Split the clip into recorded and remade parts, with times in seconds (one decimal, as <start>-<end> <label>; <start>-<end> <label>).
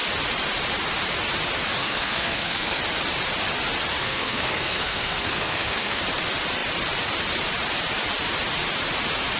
0.0-1.8 recorded; 1.8-2.8 remade; 2.8-4.0 recorded; 4.0-6.0 remade; 6.0-9.4 recorded